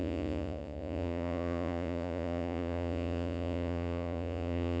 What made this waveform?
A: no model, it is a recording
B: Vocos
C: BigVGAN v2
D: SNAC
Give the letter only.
B